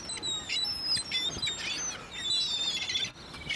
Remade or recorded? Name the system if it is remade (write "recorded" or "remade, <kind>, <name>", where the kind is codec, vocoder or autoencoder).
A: recorded